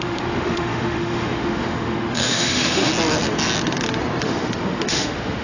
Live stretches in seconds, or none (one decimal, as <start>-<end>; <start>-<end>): 2.9-4.2